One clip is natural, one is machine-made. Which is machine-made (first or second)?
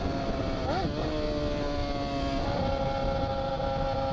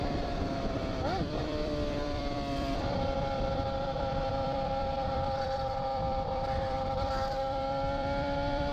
second